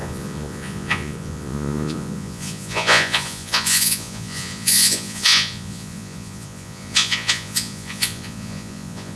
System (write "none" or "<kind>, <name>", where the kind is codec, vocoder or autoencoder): vocoder, Vocos